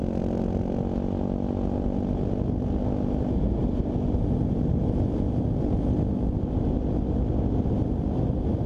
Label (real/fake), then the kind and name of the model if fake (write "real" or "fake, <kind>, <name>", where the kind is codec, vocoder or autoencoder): real